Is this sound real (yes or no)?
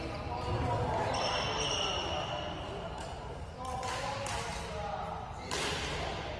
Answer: yes